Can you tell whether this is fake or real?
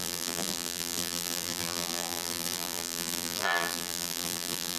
fake